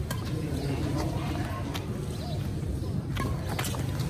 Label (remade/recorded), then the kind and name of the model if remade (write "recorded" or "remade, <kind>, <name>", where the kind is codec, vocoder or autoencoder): recorded